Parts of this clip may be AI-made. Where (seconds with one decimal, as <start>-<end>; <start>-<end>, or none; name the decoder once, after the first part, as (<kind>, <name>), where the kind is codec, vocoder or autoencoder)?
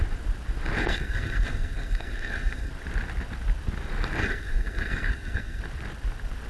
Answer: 0.8-2.7 (codec, SNAC); 4.2-5.6